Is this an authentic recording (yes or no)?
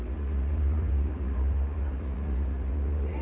no